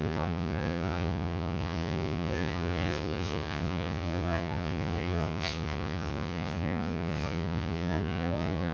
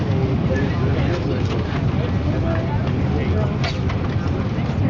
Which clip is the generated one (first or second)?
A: first